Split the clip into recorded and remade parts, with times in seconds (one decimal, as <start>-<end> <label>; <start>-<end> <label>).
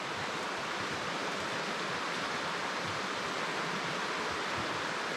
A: 0.0-5.2 recorded